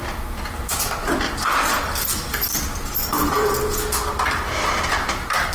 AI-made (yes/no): no